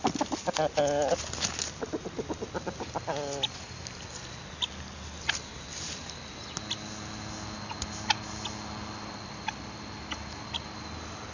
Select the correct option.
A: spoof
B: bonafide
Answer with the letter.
B